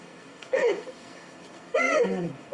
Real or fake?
fake